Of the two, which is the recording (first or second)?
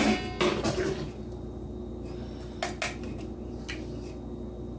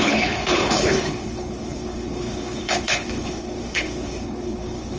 first